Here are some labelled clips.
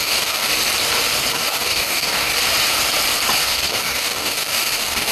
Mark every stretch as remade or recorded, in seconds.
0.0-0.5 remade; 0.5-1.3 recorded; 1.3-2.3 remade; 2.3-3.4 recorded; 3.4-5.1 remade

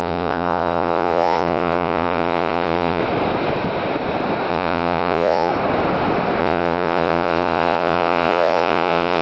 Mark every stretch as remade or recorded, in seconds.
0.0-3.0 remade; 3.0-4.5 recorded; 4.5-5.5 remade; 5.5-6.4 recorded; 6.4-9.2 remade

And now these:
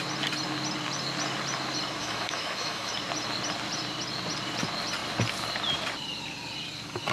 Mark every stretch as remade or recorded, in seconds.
0.0-2.0 recorded; 2.0-2.9 remade; 2.9-7.1 recorded